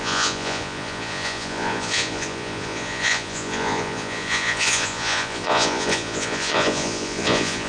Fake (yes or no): yes